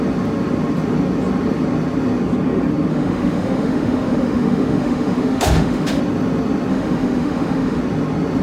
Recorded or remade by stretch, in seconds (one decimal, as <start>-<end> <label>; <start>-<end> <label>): 0.0-2.9 recorded; 2.9-6.0 remade; 6.0-6.7 recorded; 6.7-7.8 remade; 7.8-8.4 recorded